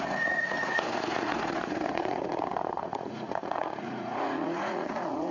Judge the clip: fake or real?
fake